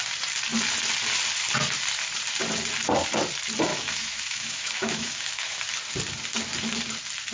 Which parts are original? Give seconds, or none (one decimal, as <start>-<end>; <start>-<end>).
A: 0.0-3.7; 5.6-7.3